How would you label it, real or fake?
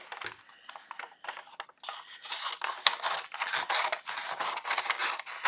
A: real